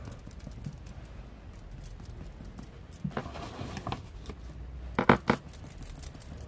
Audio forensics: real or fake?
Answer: real